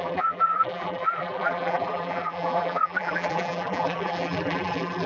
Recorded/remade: remade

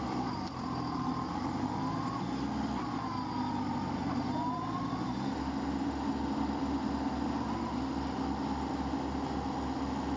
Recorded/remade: recorded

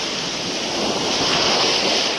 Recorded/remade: recorded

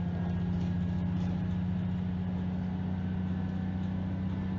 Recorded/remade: recorded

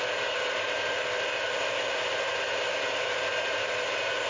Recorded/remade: recorded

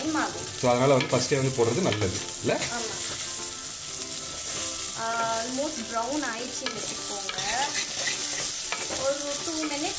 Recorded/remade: recorded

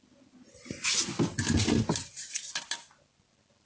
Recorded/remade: recorded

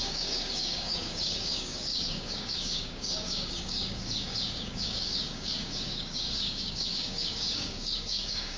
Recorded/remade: remade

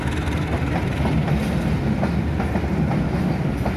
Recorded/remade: recorded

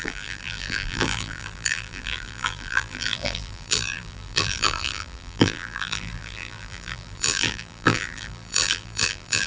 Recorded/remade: remade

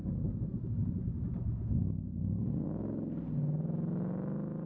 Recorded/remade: recorded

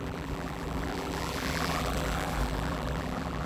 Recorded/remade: remade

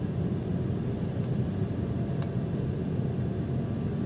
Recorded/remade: recorded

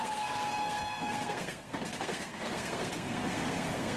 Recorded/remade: remade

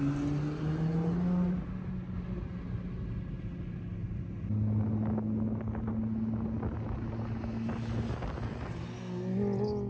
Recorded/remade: recorded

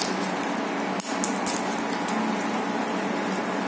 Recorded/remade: recorded